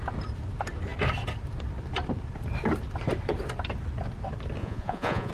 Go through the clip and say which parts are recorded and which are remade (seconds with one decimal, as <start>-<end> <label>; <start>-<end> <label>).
0.0-4.6 recorded; 4.6-5.3 remade